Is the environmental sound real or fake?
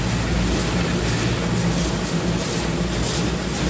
real